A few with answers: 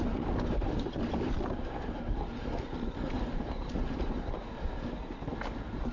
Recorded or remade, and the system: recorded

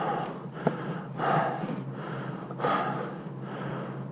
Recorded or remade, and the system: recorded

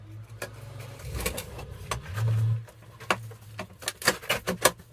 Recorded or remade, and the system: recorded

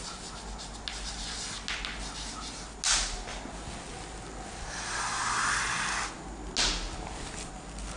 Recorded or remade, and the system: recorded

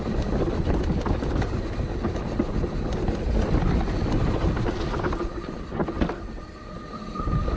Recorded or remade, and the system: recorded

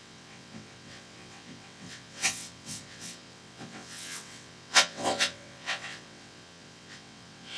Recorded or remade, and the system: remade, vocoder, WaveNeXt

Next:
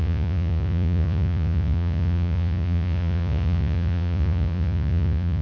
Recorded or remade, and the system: remade, vocoder, Vocos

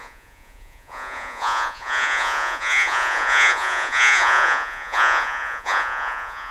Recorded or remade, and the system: remade, vocoder, Vocos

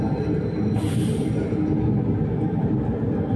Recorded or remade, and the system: recorded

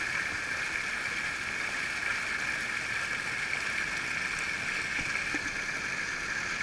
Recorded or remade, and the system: recorded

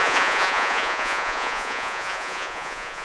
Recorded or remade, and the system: remade, vocoder, Vocos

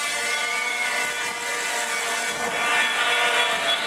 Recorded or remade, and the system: recorded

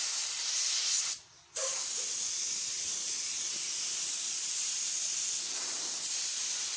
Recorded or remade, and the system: recorded